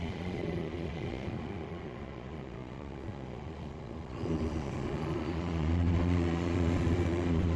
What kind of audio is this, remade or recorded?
remade